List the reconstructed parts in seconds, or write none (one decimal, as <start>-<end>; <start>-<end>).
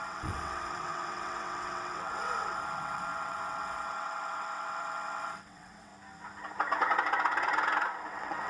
0.0-5.9; 8.0-8.5